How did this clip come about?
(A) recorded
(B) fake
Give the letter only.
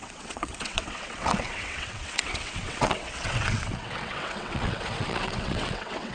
B